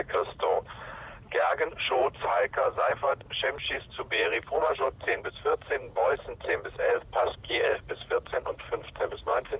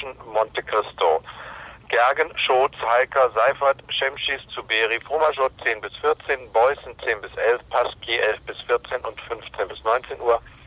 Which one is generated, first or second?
first